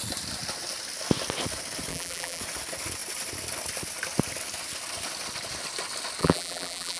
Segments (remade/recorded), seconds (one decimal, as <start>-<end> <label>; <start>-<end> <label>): 0.0-1.9 recorded; 1.9-2.4 remade; 2.4-6.2 recorded; 6.2-7.0 remade